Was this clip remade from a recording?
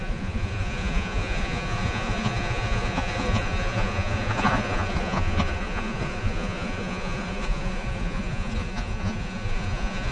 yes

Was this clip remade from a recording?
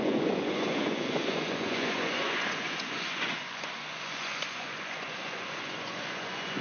yes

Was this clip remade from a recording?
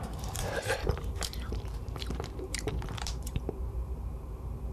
yes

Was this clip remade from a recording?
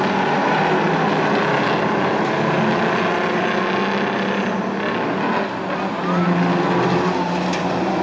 no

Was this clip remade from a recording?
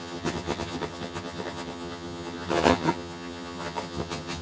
yes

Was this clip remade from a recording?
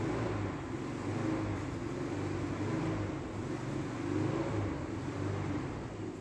no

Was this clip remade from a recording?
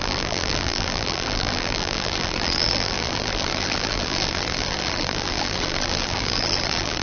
yes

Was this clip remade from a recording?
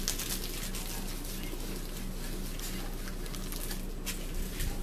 no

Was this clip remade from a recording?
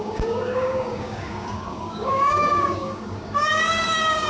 yes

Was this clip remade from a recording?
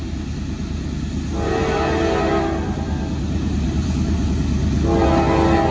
no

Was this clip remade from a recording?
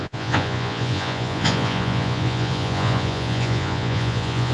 yes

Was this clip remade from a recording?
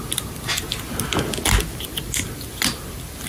no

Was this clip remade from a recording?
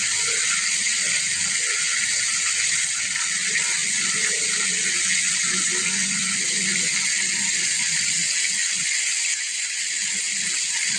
no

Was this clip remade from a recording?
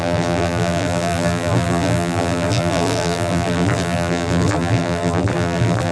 yes